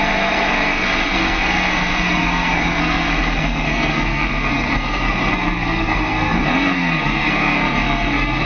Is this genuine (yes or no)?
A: no